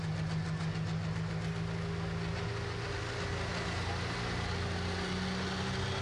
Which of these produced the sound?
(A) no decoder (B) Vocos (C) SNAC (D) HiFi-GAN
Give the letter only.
A